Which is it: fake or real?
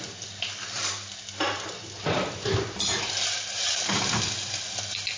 real